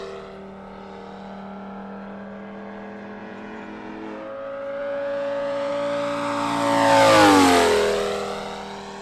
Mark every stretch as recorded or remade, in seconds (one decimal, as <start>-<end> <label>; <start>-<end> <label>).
0.0-3.2 recorded; 3.2-3.9 remade; 3.9-4.8 recorded; 4.8-5.7 remade; 5.7-9.0 recorded